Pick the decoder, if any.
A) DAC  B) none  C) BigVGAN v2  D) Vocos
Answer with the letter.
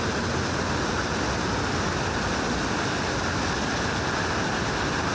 B